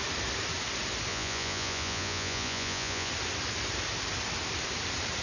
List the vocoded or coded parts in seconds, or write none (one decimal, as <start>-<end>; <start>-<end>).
1.1-3.1